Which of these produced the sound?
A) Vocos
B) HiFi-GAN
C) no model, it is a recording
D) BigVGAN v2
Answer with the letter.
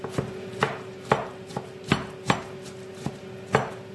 C